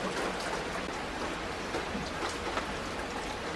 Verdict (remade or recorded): recorded